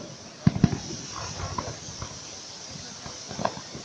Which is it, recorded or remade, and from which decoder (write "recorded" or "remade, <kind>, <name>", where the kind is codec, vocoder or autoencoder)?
recorded